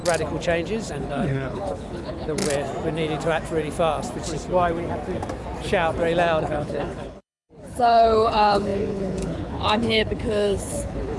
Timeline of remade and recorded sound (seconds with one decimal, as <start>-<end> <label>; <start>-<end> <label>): 0.0-0.9 recorded; 0.9-2.4 remade; 2.4-6.4 recorded; 6.4-11.2 remade